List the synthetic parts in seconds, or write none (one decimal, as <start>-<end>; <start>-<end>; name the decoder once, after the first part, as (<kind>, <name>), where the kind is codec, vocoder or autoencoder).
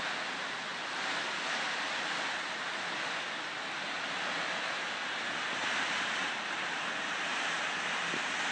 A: none